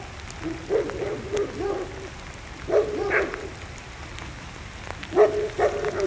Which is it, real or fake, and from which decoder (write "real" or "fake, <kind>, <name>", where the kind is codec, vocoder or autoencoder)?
real